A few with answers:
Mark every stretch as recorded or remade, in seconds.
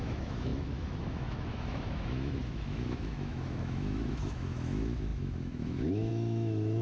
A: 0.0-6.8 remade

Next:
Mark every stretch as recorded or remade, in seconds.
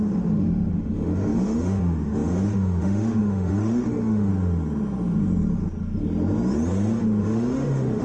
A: 0.0-4.3 remade; 4.3-7.2 recorded; 7.2-8.0 remade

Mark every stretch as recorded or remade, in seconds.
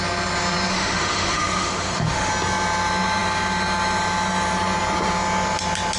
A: 0.0-0.7 recorded; 0.7-2.3 remade; 2.3-6.0 recorded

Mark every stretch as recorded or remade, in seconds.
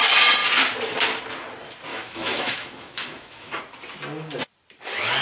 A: 0.0-1.9 recorded; 1.9-3.6 remade; 3.6-5.2 recorded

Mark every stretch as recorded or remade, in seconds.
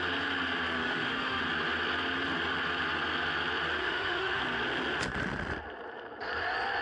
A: 0.0-0.8 recorded; 0.8-1.4 remade; 1.4-3.8 recorded; 3.8-4.4 remade; 4.4-6.8 recorded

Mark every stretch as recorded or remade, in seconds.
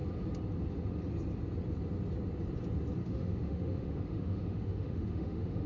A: 0.0-3.0 recorded; 3.0-5.7 remade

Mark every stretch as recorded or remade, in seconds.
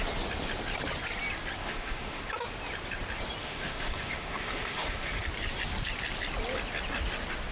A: 0.0-1.6 recorded; 1.6-2.2 remade; 2.2-3.4 recorded; 3.4-5.2 remade; 5.2-7.5 recorded